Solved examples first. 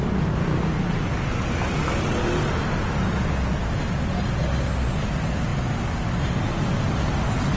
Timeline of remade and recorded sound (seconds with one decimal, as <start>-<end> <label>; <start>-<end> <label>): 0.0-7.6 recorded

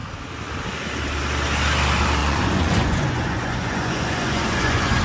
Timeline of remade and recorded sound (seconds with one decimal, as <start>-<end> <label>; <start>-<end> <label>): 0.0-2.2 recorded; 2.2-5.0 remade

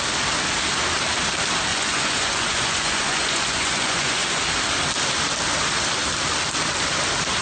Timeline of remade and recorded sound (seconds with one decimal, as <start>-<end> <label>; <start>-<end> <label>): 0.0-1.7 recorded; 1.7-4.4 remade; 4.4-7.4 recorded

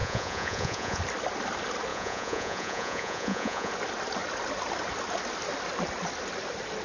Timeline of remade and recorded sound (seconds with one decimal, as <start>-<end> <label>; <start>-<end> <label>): 0.0-1.0 remade; 1.0-1.9 recorded; 1.9-3.7 remade; 3.7-6.8 recorded